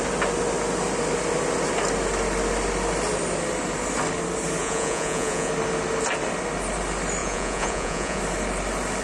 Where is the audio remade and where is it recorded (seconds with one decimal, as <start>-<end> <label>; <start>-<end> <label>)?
0.0-4.6 recorded; 4.6-5.5 remade; 5.5-7.2 recorded; 7.2-8.2 remade; 8.2-9.0 recorded